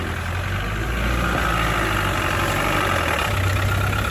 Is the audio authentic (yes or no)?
yes